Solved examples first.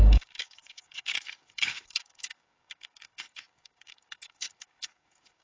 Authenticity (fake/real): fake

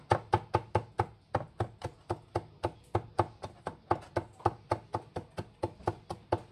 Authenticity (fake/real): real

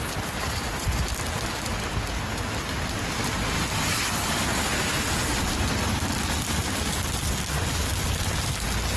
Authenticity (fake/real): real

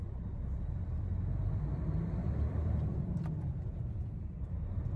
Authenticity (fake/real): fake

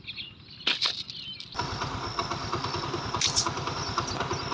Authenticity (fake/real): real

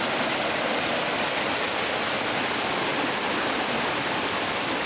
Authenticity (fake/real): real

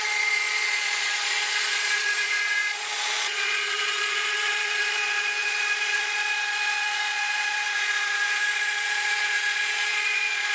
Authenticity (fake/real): fake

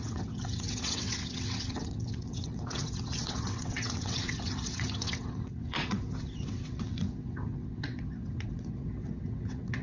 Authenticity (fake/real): fake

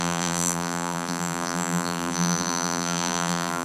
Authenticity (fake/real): fake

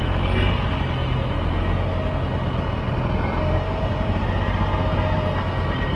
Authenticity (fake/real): real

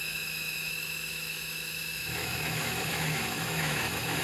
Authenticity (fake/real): fake